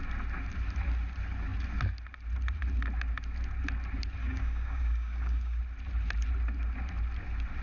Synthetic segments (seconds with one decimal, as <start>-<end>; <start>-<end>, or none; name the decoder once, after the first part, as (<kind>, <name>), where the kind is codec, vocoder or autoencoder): 4.2-5.6 (codec, DAC)

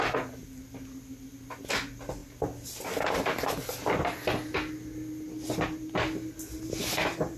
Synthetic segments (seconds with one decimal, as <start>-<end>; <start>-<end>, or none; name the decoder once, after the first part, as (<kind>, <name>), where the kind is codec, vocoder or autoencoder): none

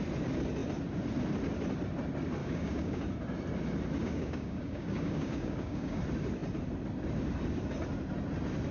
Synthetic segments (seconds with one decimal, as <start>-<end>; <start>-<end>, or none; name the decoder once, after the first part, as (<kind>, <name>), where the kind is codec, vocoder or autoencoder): 2.4-3.0 (codec, DAC); 4.0-6.0

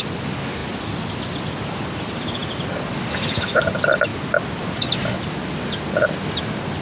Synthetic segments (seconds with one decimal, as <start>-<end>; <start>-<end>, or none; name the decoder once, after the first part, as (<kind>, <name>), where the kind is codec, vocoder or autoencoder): none

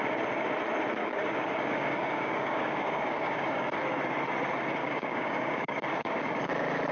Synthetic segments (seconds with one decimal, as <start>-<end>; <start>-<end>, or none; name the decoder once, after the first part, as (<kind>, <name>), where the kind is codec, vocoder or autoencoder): 1.0-3.8 (codec, DAC); 4.8-6.5

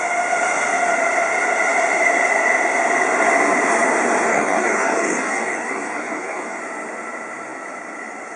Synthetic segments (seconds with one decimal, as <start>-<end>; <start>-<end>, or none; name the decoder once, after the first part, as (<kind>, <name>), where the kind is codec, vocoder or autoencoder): 4.3-6.6 (codec, DAC)

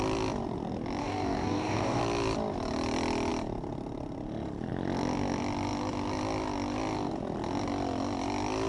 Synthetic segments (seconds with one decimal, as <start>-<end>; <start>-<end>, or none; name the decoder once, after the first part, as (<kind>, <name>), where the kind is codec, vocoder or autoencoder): 1.0-2.0 (codec, DAC)